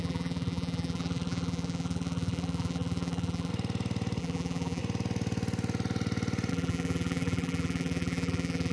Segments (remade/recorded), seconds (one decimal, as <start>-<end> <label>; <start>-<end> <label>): 0.0-3.5 remade; 3.5-4.2 recorded; 4.2-4.8 remade; 4.8-6.5 recorded; 6.5-8.7 remade